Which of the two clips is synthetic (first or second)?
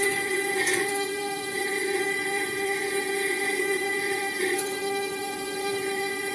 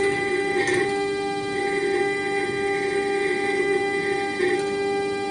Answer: first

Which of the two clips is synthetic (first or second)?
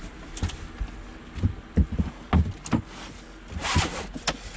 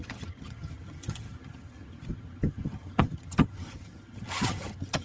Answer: second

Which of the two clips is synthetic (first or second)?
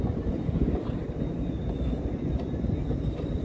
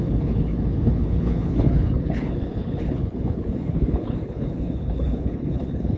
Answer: second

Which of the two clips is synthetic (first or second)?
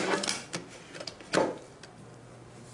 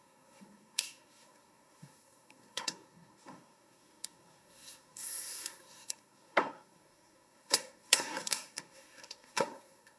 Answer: second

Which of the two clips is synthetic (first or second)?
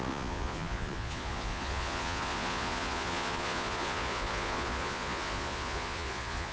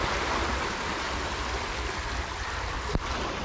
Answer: first